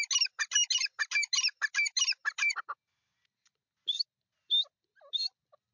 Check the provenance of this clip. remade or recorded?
recorded